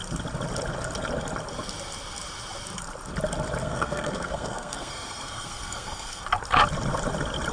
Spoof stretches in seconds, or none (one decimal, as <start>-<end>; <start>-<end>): 3.6-6.2